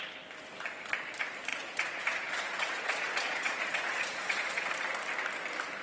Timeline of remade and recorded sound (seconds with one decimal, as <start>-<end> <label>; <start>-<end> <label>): 0.0-1.5 recorded; 1.5-4.7 remade; 4.7-5.8 recorded